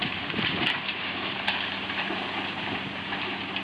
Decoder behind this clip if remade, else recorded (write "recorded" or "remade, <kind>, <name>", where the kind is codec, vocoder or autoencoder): remade, vocoder, BigVGAN v2